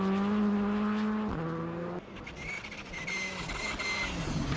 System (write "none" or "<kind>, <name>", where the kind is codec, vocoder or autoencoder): none